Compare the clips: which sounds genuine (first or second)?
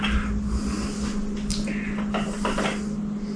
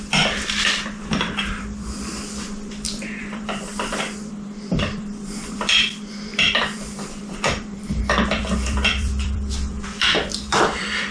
first